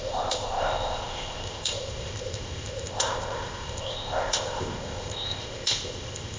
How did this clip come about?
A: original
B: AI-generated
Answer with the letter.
B